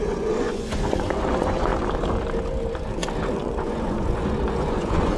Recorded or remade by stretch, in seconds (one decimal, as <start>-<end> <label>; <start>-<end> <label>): 0.0-1.7 remade; 1.7-3.3 recorded; 3.3-5.2 remade